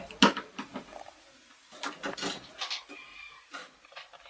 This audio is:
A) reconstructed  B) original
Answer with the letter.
B